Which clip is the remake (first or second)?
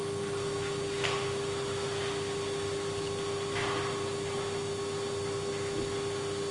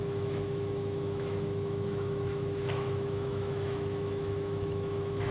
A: second